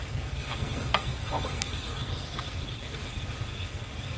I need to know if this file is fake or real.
fake